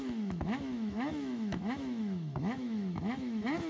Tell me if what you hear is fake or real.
fake